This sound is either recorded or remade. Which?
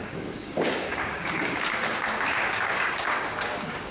remade